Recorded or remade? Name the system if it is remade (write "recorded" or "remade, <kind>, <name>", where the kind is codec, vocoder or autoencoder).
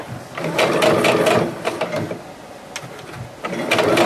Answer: recorded